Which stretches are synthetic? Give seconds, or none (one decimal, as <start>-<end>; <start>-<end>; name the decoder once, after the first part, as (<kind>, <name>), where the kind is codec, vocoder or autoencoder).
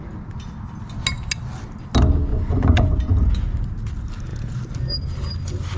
2.3-3.0 (vocoder, Vocos)